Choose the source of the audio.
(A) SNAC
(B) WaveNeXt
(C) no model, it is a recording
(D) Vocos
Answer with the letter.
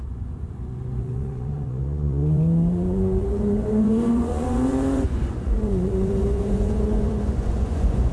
D